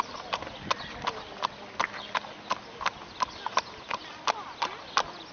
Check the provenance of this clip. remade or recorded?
recorded